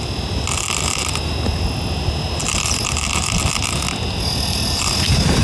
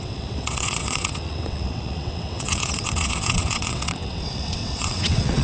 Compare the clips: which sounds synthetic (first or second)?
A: second